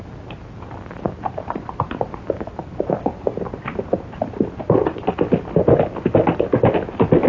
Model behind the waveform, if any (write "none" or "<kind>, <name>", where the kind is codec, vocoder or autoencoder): none